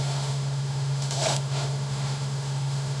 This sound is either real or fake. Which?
fake